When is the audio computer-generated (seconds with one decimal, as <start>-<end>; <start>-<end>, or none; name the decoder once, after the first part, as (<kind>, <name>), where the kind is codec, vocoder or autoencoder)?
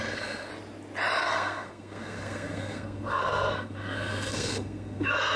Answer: 0.0-0.5 (codec, SNAC); 1.2-5.4